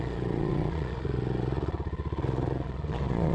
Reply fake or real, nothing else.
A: fake